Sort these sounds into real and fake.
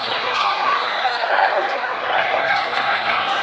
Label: fake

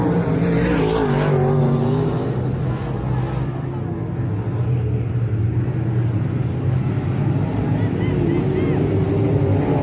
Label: real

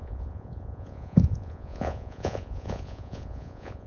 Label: fake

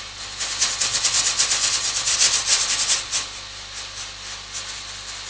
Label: real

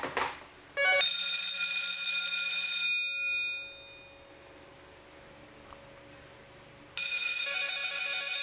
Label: real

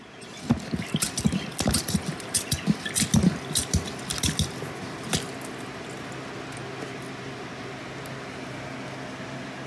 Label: real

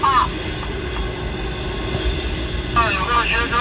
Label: real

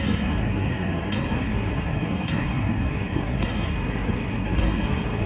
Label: fake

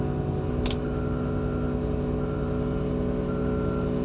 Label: real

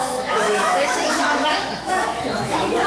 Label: fake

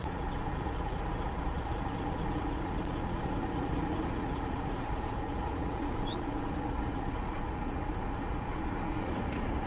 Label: fake